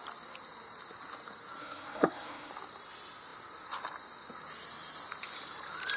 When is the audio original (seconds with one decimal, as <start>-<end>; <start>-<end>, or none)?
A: 0.0-1.6; 2.5-6.0